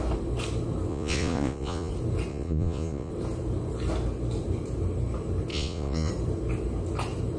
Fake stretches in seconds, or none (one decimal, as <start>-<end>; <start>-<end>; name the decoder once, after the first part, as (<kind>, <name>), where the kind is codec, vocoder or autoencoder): 0.9-1.9 (vocoder, Vocos); 2.3-3.1; 5.5-6.1